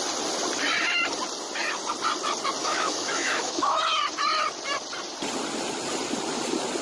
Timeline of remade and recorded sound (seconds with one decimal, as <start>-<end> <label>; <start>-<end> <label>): 0.0-2.6 recorded; 2.6-3.8 remade; 3.8-6.8 recorded